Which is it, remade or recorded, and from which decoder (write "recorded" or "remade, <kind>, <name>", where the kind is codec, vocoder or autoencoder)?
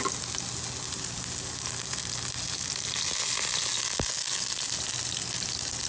recorded